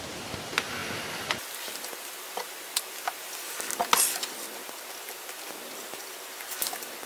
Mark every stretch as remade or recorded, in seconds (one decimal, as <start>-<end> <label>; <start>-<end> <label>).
0.0-5.8 recorded; 5.8-6.5 remade; 6.5-7.1 recorded